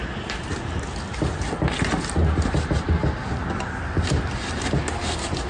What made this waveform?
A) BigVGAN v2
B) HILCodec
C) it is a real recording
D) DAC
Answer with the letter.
C